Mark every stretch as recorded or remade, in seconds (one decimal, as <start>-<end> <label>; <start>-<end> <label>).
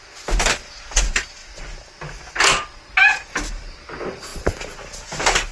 0.0-5.5 recorded